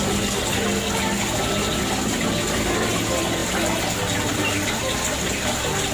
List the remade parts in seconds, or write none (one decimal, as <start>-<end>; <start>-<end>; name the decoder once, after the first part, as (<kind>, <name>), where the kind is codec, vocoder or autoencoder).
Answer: none